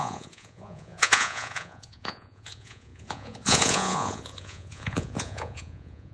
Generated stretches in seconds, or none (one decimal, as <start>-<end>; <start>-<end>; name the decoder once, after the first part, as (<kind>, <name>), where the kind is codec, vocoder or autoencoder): 0.0-6.1 (vocoder, Vocos)